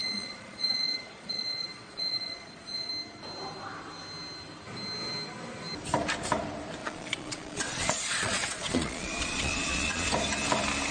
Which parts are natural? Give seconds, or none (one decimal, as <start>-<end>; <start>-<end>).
2.9-6.8; 10.1-10.9